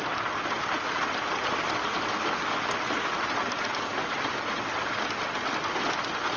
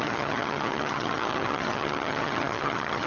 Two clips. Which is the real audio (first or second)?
first